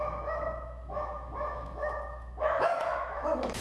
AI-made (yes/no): yes